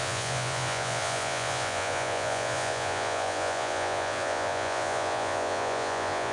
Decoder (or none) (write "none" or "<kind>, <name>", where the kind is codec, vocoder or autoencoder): vocoder, Vocos